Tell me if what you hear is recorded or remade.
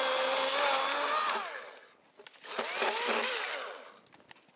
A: recorded